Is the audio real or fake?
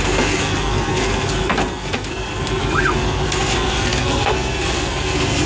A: fake